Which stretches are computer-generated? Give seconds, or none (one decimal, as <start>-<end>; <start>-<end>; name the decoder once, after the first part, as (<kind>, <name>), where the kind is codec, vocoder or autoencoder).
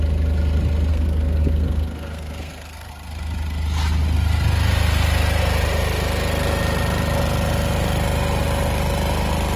0.9-2.9 (codec, SNAC)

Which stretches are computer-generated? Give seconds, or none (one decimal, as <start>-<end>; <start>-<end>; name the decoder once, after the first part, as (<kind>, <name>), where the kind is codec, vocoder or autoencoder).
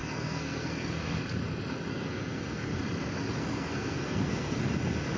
0.0-1.2 (codec, SNAC); 1.9-2.8; 3.3-4.6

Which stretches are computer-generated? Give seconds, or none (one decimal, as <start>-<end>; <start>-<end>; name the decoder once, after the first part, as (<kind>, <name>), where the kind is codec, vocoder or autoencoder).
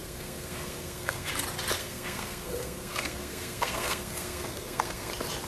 0.0-1.3 (codec, SNAC); 1.8-5.1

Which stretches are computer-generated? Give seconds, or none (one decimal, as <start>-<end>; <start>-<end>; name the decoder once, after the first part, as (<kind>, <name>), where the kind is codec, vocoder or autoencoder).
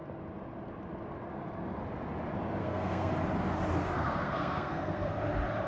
2.6-3.1 (codec, SNAC); 3.8-5.1